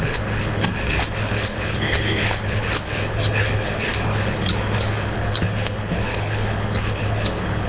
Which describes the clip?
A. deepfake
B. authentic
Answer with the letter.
A